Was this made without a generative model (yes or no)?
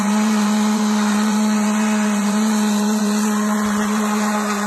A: no